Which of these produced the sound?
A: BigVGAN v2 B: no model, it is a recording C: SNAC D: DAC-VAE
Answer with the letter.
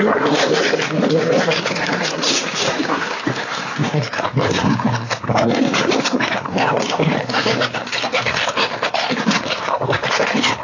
C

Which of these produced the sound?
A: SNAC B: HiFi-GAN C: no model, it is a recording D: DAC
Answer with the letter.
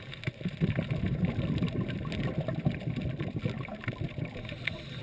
C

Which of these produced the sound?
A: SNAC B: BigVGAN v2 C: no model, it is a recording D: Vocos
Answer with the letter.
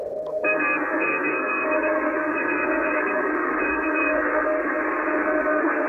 A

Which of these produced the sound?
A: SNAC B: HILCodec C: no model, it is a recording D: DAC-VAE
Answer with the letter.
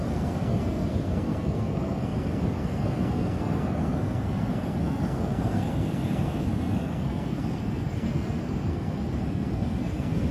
A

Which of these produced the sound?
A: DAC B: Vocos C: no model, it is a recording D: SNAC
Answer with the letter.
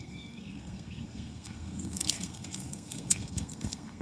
D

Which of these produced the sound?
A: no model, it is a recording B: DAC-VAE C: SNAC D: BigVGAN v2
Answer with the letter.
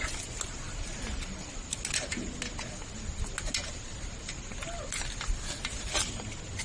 A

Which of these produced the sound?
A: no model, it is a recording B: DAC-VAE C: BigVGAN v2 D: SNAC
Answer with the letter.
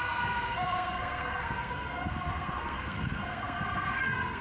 D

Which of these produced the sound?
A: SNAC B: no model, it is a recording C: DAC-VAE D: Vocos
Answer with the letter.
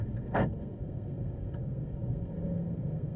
A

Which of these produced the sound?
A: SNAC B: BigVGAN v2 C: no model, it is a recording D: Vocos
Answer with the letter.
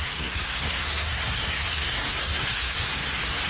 A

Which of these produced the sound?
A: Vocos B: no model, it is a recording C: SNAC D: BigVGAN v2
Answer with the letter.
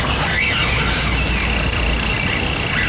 B